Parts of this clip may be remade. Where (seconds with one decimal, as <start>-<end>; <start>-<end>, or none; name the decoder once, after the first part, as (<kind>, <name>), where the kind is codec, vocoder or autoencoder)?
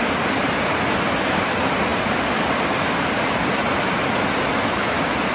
none